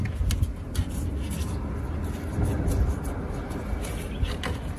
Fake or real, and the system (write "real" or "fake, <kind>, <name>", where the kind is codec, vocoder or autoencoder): real